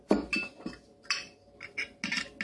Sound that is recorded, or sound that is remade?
recorded